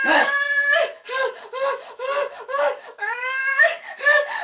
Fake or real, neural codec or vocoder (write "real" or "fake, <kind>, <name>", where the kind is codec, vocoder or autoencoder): fake, codec, DAC